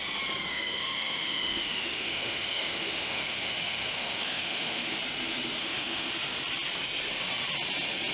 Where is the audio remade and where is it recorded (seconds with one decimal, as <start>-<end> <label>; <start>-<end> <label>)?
0.0-0.5 recorded; 0.5-5.0 remade; 5.0-5.6 recorded; 5.6-6.1 remade; 6.1-8.1 recorded